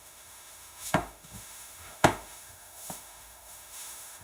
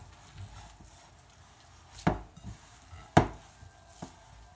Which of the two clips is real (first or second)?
second